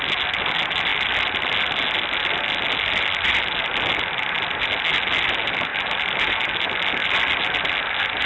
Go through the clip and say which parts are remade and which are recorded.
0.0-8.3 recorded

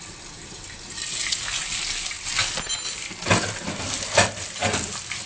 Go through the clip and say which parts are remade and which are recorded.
0.0-5.3 recorded

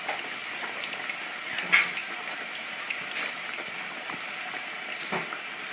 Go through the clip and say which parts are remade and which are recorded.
0.0-0.4 recorded; 0.4-1.2 remade; 1.2-2.0 recorded; 2.0-5.7 remade

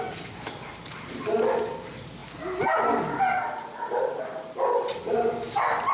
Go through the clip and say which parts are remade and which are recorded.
0.0-5.9 recorded

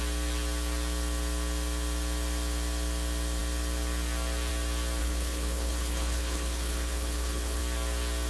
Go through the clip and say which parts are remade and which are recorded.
0.0-5.0 recorded; 5.0-7.6 remade; 7.6-8.3 recorded

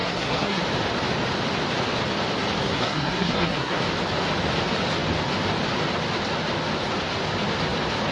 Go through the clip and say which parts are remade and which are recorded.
0.0-0.6 remade; 0.6-2.6 recorded; 2.6-3.8 remade; 3.8-8.1 recorded

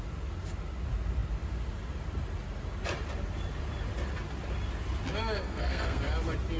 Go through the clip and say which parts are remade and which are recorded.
0.0-5.4 recorded; 5.4-6.0 remade; 6.0-6.6 recorded